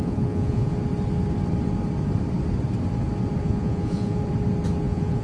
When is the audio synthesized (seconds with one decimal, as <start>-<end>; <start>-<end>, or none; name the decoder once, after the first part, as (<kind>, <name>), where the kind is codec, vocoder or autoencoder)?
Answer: 0.0-0.7 (vocoder, Vocos); 3.4-4.2; 4.8-5.2